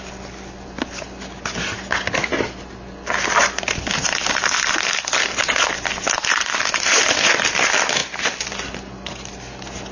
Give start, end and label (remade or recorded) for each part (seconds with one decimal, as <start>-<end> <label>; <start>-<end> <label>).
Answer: 0.0-8.0 recorded; 8.0-8.6 remade; 8.6-9.9 recorded